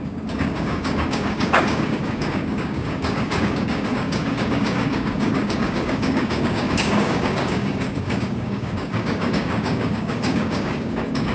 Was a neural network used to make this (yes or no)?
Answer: yes